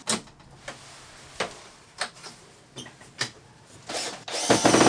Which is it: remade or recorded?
recorded